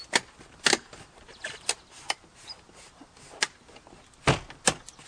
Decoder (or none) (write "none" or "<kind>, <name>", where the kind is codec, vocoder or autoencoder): none